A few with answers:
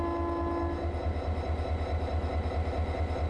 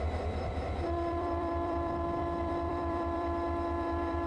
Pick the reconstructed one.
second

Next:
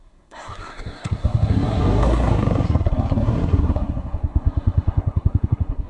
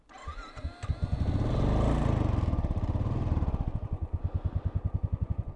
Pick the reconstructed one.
first